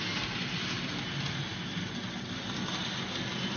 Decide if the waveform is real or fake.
real